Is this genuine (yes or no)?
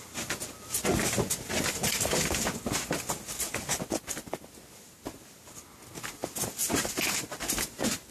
yes